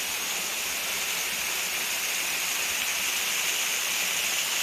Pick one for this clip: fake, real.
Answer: real